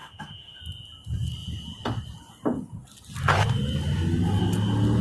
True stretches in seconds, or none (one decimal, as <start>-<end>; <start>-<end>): 0.6-5.0